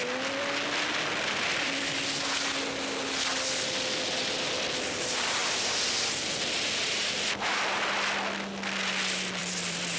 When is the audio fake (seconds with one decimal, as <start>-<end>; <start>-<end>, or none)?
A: 5.4-6.3; 9.4-10.0